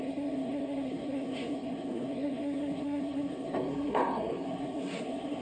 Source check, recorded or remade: remade